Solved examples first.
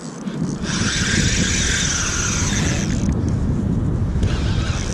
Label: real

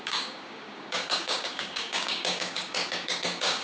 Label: fake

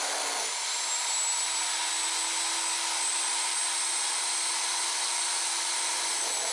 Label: real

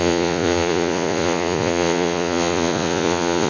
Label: fake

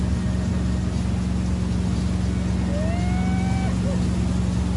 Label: real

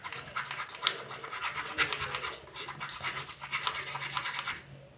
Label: real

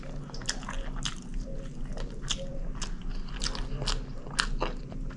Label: real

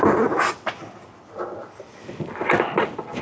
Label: real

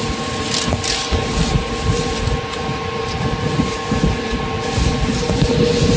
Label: real